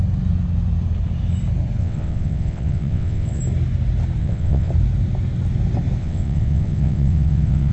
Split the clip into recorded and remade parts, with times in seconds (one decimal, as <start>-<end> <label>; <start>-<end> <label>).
0.0-1.8 recorded; 1.8-3.4 remade; 3.4-4.2 recorded; 4.2-4.7 remade; 4.7-6.0 recorded; 6.0-7.7 remade